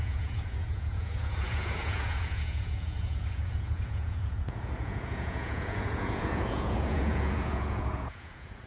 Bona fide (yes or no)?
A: no